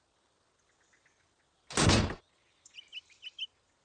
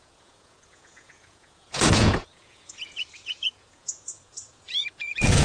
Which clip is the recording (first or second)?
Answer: first